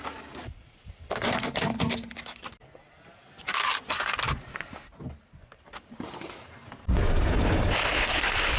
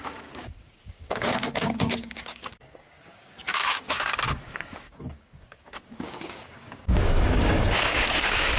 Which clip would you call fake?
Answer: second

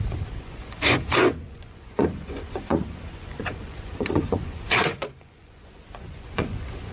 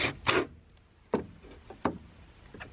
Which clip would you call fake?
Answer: first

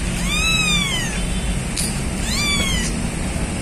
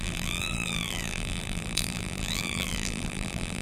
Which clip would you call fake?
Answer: second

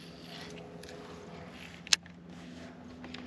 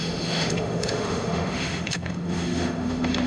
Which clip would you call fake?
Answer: second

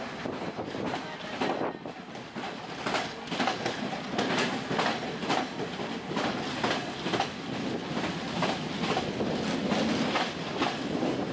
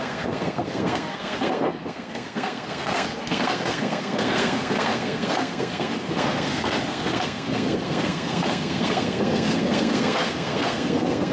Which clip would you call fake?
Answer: second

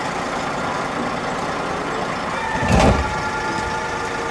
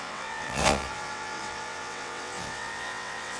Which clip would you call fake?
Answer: second